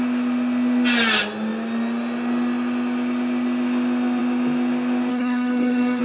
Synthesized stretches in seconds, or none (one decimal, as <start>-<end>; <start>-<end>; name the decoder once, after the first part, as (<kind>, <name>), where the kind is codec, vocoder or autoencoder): 5.1-6.0 (codec, SNAC)